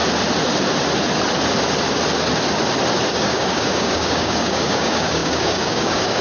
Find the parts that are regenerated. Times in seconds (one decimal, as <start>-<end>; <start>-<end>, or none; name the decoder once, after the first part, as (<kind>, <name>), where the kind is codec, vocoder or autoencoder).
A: 3.1-6.2 (codec, DAC)